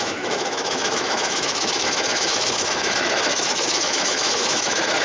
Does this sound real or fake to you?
fake